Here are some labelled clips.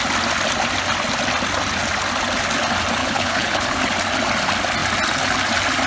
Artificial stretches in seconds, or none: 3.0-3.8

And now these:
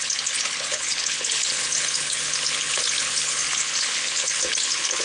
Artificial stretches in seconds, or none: 0.0-5.0

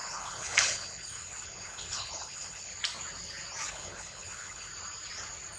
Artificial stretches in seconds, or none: 0.0-2.7; 3.7-4.7

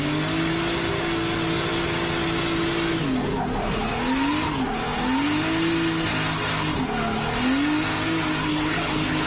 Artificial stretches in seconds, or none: 8.5-9.3